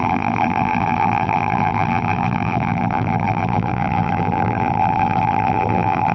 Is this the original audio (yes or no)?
no